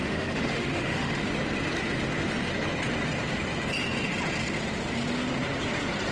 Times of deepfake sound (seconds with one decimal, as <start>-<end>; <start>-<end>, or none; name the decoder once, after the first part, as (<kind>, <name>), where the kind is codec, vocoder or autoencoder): 0.0-1.2 (autoencoder, DAC-VAE)